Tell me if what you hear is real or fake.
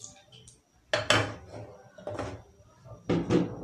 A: real